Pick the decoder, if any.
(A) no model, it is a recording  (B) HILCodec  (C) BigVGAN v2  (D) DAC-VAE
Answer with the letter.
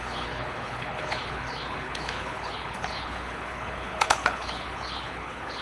B